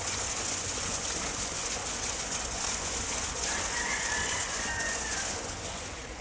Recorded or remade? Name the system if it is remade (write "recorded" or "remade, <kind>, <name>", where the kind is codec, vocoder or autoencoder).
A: remade, vocoder, Vocos